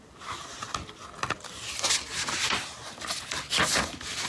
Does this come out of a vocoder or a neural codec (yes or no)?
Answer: no